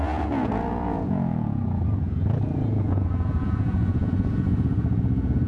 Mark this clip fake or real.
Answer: fake